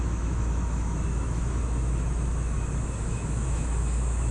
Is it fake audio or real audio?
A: fake